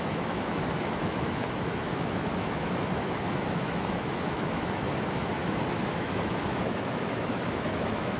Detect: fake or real fake